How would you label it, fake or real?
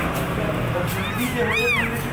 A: real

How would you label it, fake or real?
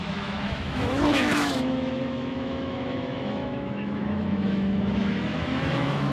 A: fake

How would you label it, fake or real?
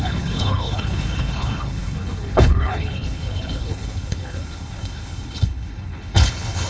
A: fake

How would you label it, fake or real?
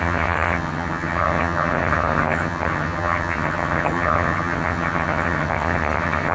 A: fake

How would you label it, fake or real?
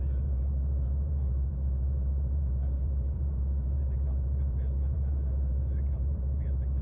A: fake